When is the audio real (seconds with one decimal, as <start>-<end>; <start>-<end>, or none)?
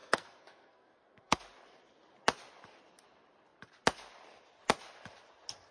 1.4-5.7